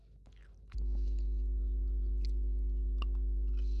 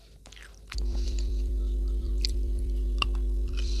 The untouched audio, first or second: first